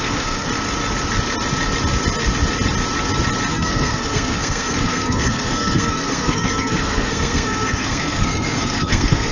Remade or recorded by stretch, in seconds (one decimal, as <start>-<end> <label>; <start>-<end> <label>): 0.0-0.5 remade; 0.5-3.5 recorded; 3.5-9.3 remade